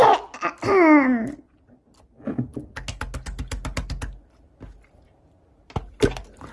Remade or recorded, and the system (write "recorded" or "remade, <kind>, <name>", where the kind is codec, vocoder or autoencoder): recorded